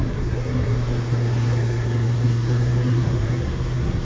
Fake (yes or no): yes